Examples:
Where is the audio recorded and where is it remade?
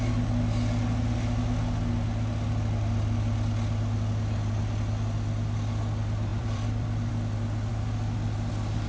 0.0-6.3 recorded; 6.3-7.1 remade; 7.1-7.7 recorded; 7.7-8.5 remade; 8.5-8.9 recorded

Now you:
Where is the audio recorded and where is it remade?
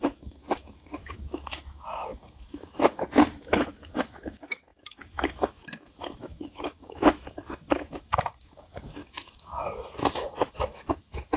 0.0-11.4 remade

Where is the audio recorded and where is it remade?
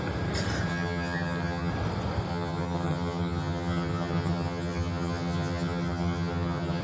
0.0-0.7 recorded; 0.7-1.7 remade; 1.7-2.3 recorded; 2.3-6.8 remade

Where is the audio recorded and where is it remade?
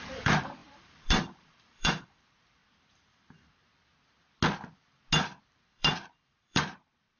0.0-2.6 remade; 2.6-5.4 recorded; 5.4-7.2 remade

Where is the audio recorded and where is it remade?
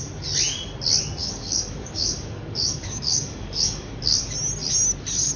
0.0-1.2 recorded; 1.2-4.0 remade; 4.0-5.4 recorded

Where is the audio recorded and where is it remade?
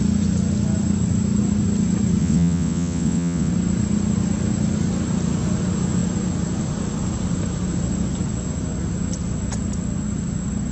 0.0-2.2 recorded; 2.2-3.5 remade; 3.5-10.7 recorded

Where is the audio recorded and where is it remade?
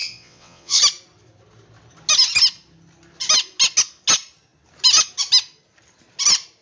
0.0-0.8 remade; 0.8-6.6 recorded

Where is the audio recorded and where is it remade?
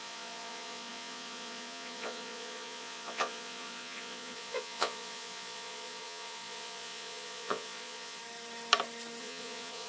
0.0-8.2 remade; 8.2-9.2 recorded; 9.2-9.9 remade